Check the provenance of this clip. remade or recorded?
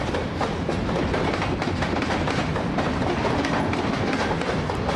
recorded